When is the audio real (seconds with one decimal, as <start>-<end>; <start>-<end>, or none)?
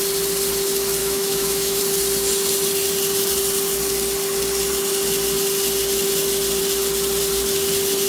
0.0-1.0; 1.8-8.1